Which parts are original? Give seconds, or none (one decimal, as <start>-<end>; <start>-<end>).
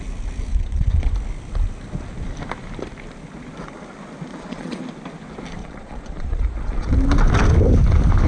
0.0-0.5; 1.1-4.3; 4.8-5.6; 6.9-8.3